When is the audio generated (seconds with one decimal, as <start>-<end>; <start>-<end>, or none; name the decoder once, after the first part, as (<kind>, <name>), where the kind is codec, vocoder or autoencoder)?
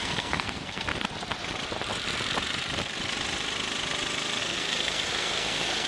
0.0-0.9 (codec, SNAC); 4.4-5.9